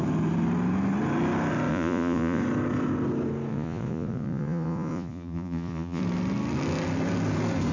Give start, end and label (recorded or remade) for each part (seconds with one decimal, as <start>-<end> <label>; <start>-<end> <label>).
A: 0.0-1.7 recorded; 1.7-2.4 remade; 2.4-3.5 recorded; 3.5-6.0 remade; 6.0-7.7 recorded